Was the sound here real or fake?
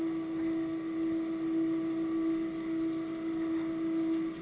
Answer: real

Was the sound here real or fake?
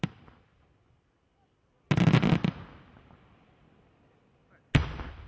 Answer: real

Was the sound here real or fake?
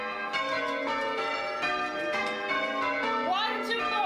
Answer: real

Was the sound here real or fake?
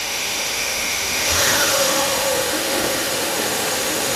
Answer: fake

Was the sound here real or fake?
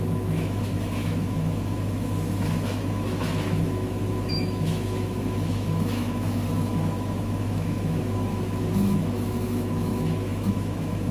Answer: fake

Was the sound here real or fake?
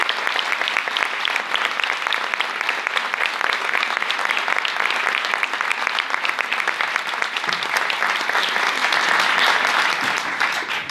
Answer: real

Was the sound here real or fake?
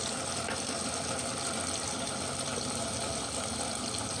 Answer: real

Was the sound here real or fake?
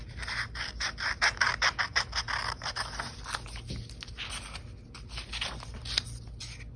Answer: real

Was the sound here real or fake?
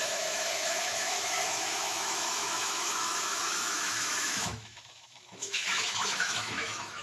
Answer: fake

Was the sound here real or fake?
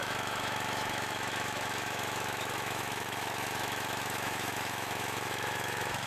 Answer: fake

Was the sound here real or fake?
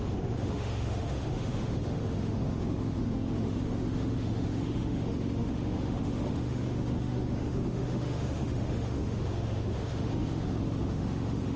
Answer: fake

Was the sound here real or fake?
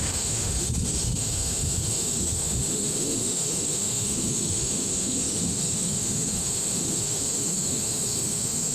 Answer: fake